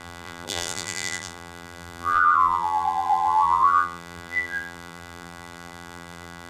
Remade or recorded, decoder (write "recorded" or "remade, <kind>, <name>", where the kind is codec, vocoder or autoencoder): remade, vocoder, BigVGAN v2